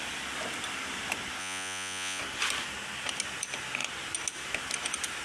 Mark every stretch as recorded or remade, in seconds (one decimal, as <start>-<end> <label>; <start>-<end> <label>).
0.0-1.4 recorded; 1.4-2.2 remade; 2.2-5.2 recorded